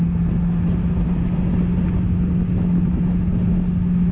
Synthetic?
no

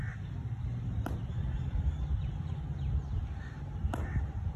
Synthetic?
no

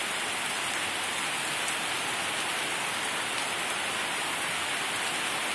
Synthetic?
no